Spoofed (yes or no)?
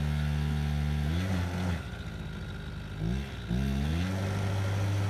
no